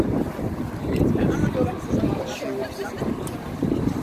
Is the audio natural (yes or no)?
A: yes